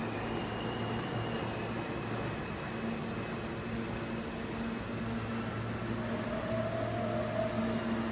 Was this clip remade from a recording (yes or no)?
no